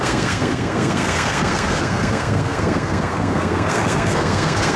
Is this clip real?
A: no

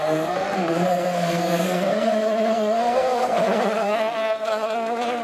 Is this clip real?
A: no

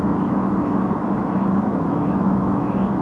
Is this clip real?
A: no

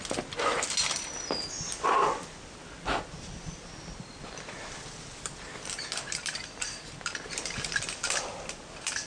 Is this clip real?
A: yes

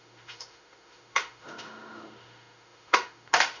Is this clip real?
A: no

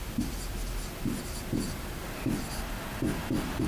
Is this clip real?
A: yes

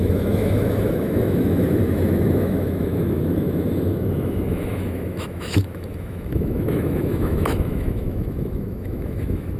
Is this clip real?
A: no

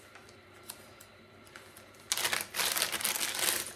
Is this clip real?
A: yes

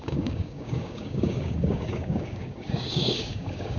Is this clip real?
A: no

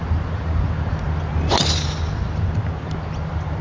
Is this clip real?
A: yes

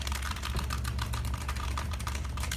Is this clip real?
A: no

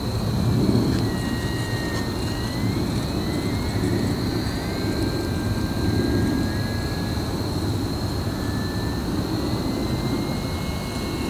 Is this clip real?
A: yes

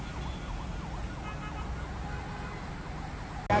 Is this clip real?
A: yes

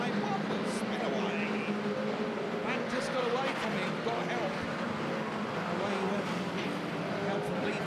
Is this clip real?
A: yes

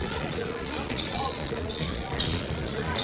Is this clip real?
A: no